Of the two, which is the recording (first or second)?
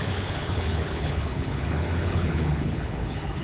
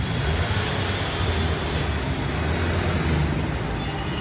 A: second